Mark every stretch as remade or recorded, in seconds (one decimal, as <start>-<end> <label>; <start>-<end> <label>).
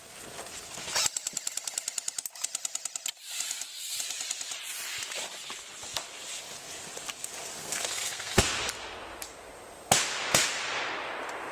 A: 0.0-7.6 recorded; 7.6-8.3 remade; 8.3-11.5 recorded